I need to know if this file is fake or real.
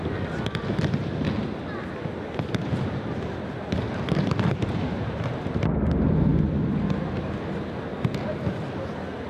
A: real